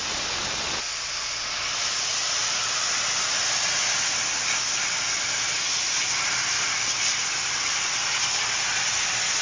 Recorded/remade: recorded